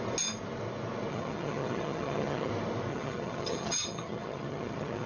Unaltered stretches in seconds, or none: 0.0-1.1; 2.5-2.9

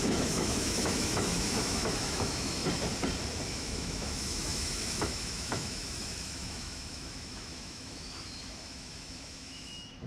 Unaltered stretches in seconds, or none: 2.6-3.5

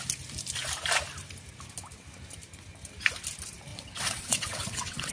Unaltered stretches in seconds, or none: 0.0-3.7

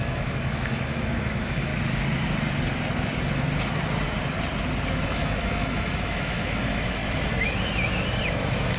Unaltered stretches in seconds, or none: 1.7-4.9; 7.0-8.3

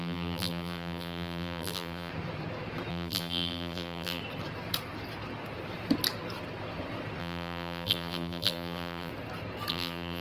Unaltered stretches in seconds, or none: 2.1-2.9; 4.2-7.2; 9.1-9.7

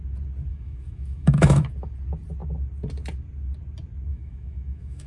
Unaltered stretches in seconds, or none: 0.0-0.5; 1.7-4.1